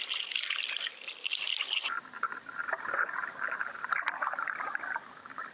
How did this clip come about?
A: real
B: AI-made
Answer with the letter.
A